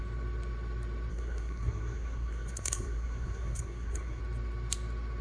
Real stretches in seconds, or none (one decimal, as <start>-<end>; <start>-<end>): 0.0-1.1; 4.2-5.2